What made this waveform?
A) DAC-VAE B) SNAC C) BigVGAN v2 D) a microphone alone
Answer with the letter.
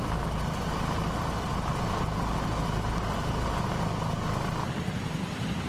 D